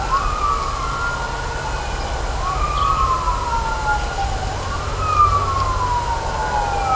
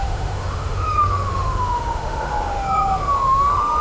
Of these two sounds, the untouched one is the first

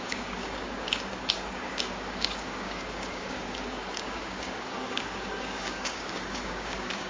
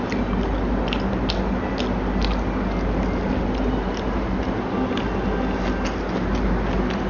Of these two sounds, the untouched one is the second